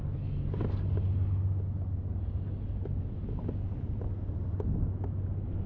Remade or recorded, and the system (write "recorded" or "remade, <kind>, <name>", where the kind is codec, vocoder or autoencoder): recorded